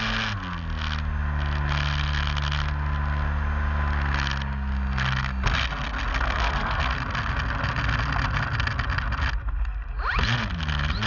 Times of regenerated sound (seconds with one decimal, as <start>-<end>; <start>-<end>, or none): 6.1-6.8

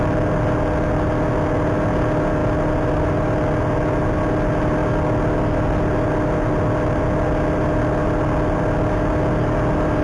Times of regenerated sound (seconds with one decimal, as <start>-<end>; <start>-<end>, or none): none

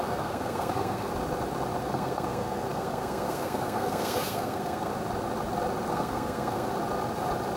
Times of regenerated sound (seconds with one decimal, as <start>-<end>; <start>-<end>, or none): 0.0-1.1; 1.8-4.9; 5.9-6.7